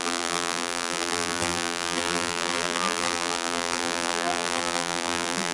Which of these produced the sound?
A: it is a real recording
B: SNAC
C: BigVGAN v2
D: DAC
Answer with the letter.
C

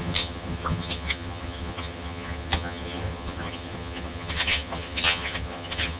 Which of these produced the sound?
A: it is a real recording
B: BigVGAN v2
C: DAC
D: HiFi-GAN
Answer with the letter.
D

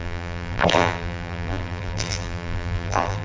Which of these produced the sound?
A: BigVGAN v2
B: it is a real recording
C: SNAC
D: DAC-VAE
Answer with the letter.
A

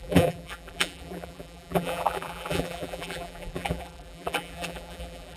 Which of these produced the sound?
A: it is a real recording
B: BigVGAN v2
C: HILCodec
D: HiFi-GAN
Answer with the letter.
B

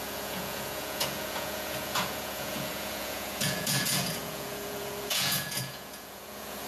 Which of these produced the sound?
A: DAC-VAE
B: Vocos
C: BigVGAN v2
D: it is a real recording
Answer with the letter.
B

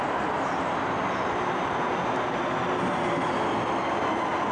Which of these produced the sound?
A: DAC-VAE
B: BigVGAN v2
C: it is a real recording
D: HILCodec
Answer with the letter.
C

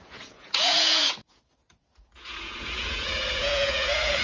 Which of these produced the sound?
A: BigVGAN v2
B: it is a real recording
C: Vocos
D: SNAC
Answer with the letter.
C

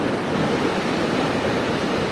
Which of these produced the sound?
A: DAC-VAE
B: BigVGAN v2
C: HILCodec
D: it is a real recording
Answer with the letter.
D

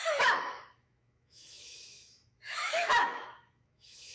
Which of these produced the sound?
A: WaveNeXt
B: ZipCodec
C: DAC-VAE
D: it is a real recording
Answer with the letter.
C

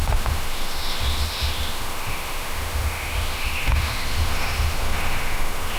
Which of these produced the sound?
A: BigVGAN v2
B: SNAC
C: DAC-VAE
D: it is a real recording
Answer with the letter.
C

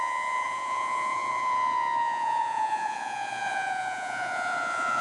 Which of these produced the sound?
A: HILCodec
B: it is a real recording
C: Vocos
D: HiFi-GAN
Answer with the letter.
C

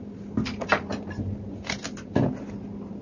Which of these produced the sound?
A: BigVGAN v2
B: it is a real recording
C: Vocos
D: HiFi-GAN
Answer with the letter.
B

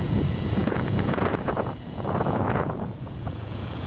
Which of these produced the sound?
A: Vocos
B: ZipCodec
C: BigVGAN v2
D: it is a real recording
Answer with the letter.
A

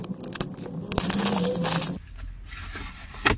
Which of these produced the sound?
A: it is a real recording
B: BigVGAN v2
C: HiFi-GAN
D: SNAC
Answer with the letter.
A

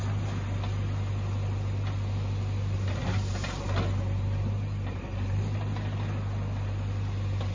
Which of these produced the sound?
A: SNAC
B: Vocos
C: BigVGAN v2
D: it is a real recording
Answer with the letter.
D